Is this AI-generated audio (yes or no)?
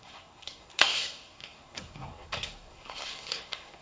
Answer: yes